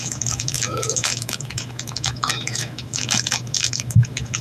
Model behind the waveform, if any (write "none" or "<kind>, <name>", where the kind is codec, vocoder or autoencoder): autoencoder, DAC-VAE